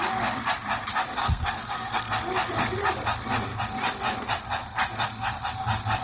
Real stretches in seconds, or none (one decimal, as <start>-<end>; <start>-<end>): 0.0-1.2; 2.1-6.0